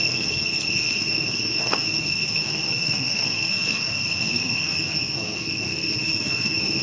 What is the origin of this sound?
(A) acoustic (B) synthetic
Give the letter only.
B